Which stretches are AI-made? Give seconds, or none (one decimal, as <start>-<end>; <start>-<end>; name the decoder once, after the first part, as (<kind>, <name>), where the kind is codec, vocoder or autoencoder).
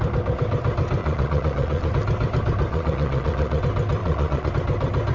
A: 1.0-1.9 (vocoder, Vocos); 2.7-3.6; 4.0-4.5